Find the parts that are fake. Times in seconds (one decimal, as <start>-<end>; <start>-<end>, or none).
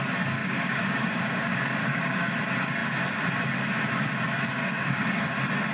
0.4-2.3; 4.6-5.2